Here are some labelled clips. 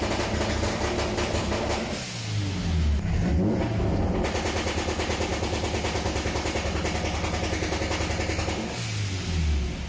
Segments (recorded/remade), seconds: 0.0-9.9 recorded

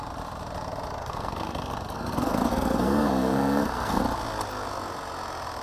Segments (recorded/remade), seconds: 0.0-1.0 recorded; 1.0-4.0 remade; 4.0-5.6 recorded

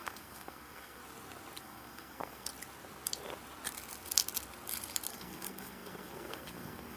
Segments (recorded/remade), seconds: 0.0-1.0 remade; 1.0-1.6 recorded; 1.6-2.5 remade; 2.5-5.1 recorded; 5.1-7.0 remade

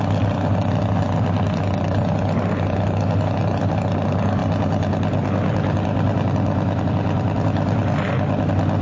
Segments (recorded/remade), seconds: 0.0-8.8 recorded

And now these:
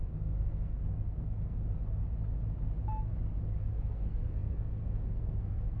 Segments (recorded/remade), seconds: 0.0-2.0 remade; 2.0-3.6 recorded; 3.6-5.8 remade

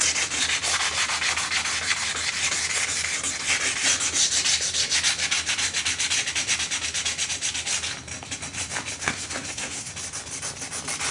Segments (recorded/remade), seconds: 0.0-9.0 recorded; 9.0-9.9 remade; 9.9-11.1 recorded

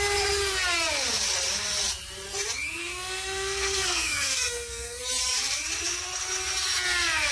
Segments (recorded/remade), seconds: 0.0-2.8 recorded; 2.8-5.0 remade; 5.0-7.3 recorded

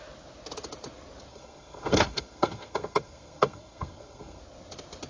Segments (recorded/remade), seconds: 0.0-1.3 recorded; 1.3-4.4 remade; 4.4-5.1 recorded